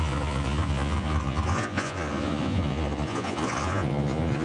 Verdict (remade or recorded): remade